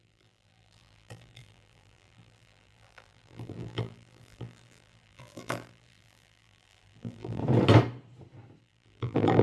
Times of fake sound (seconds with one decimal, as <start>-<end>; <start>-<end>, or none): 0.0-7.4; 8.6-9.4